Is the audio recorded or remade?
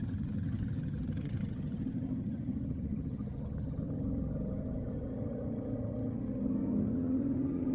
remade